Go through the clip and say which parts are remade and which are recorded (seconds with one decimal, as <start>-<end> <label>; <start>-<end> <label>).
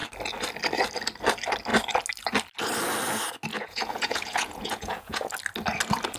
0.0-3.5 recorded; 3.5-5.3 remade; 5.3-6.2 recorded